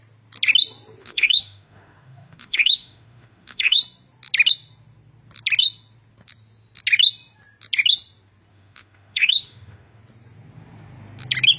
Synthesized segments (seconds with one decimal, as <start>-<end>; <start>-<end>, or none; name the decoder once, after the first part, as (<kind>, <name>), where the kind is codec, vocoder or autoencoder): 1.0-3.8 (autoencoder, DAC-VAE); 8.5-10.0